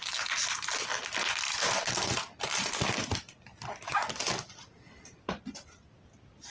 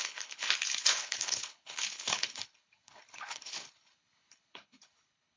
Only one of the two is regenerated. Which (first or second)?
second